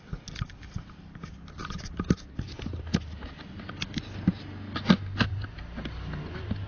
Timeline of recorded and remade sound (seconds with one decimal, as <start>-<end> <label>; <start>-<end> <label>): 0.0-6.7 recorded